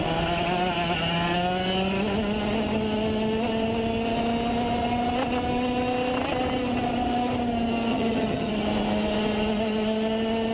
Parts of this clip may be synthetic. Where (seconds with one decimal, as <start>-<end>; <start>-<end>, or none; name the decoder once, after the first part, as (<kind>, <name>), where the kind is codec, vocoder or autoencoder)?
7.9-8.5 (vocoder, HiFi-GAN)